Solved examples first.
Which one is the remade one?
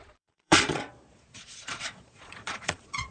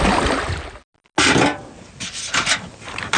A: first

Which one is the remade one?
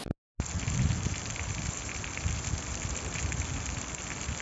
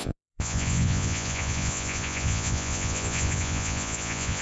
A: second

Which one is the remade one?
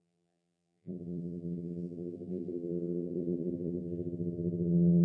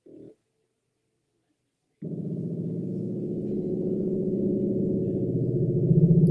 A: first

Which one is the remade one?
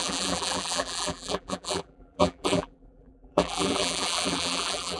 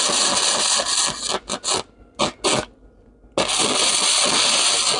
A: first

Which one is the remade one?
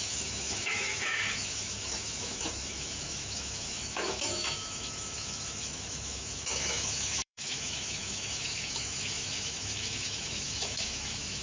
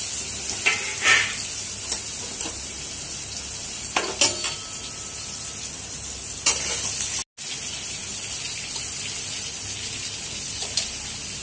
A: first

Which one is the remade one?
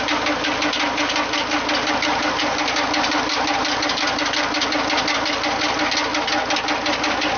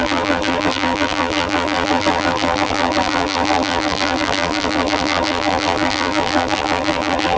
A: second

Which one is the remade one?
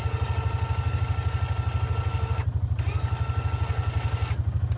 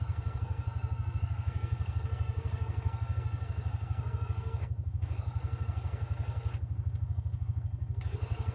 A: second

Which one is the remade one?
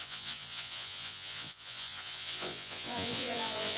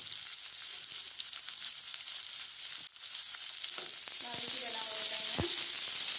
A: first